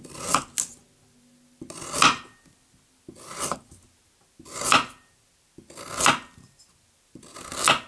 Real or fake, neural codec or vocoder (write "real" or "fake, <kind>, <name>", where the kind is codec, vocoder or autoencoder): real